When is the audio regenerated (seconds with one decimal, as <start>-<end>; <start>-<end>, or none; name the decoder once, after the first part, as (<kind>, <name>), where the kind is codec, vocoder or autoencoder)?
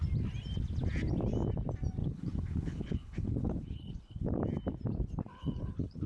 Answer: 2.0-4.4 (codec, HILCodec); 5.3-6.1